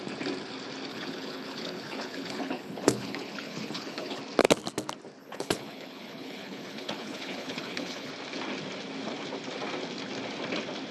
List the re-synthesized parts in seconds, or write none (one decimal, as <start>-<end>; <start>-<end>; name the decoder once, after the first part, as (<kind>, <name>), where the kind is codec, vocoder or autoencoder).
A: 0.9-4.2 (codec, HILCodec); 5.2-8.1